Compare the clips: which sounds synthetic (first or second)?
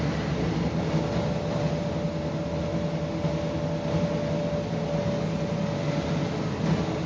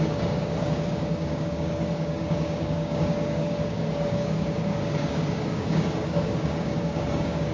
second